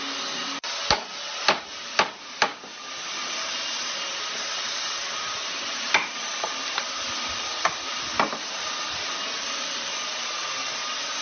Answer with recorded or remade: recorded